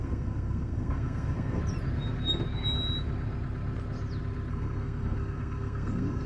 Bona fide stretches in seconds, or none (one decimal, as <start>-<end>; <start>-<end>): 1.6-4.5